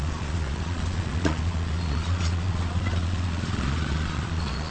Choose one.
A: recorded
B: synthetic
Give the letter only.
B